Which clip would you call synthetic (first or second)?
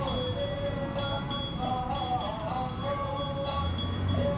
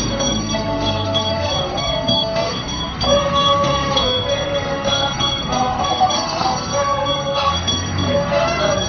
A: second